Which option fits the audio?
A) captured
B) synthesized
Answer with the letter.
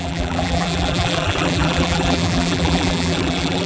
B